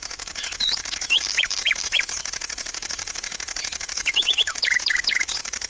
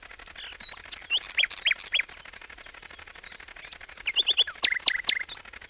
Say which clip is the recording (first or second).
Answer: second